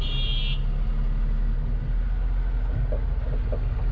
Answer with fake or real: real